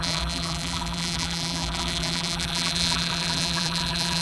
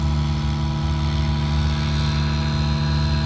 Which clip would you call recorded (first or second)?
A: second